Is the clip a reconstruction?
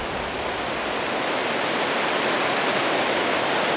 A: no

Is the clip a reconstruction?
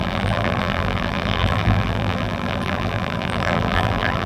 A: yes